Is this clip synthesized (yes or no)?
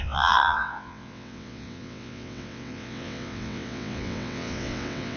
yes